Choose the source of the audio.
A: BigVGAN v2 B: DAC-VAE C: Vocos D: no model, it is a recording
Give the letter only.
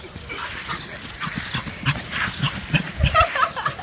D